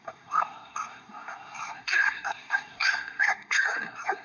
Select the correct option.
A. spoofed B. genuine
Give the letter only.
A